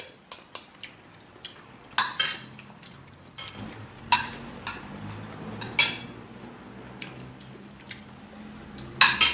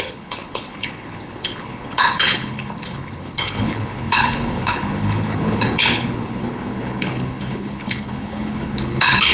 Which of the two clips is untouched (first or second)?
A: first